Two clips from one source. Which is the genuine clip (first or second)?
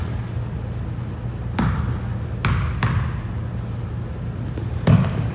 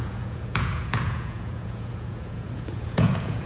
first